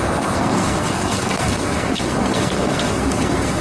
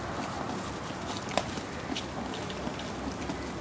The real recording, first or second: second